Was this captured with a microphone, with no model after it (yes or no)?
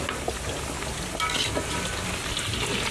yes